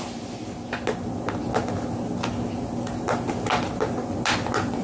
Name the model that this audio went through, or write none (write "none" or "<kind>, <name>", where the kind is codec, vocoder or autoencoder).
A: none